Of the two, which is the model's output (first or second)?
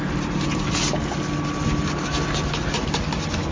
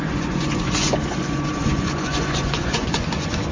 second